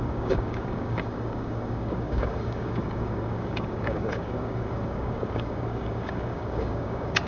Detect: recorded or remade remade